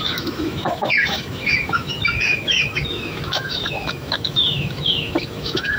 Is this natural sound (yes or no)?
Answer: no